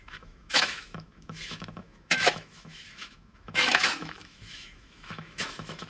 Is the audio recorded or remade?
remade